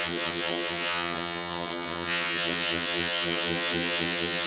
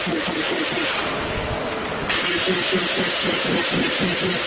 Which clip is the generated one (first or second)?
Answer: first